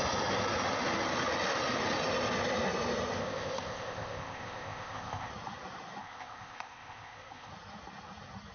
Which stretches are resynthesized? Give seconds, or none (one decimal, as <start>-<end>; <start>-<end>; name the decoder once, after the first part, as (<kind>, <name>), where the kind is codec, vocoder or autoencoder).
3.2-5.3 (codec, ZipCodec); 6.0-7.5